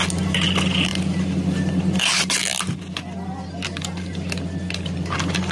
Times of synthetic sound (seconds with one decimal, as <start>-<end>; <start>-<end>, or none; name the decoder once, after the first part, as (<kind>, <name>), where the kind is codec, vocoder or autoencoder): none